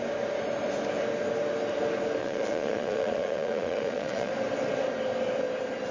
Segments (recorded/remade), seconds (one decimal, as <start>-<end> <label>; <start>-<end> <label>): 0.0-2.2 recorded; 2.2-4.3 remade; 4.3-5.9 recorded